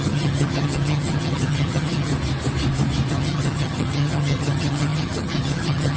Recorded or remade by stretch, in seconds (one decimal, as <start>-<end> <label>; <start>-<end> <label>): 0.0-2.1 remade; 2.1-3.1 recorded; 3.1-6.0 remade